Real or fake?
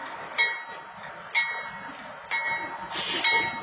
real